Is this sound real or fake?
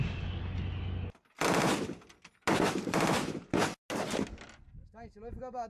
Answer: real